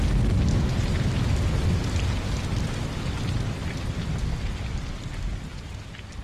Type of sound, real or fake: real